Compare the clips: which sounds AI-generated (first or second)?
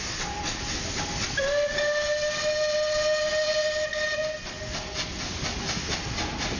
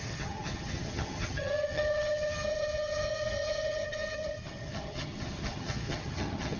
second